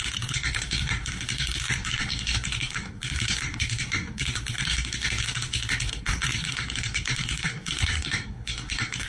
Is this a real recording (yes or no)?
no